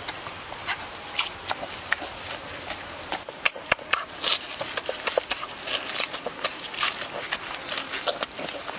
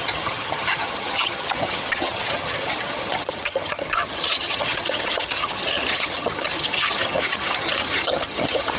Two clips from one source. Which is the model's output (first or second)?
second